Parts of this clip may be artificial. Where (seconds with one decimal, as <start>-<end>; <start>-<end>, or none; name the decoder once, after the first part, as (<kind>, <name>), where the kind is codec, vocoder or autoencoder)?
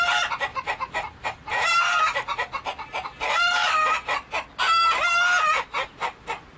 0.5-2.0 (vocoder, BigVGAN v2)